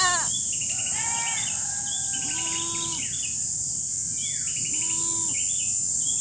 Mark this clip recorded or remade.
recorded